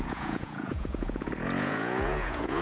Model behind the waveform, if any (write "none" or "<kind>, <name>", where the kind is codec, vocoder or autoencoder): vocoder, Vocos